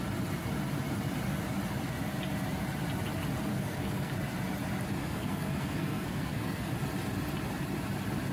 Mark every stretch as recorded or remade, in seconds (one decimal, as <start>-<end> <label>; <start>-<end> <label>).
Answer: 0.0-3.5 recorded; 3.5-4.1 remade; 4.1-5.0 recorded; 5.0-6.7 remade; 6.7-8.3 recorded